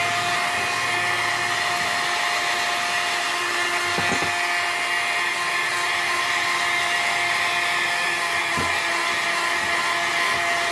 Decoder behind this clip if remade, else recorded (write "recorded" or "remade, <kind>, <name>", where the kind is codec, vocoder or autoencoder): recorded